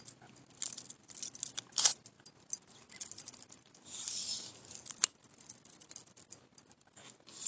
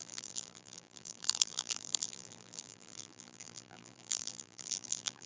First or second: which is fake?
second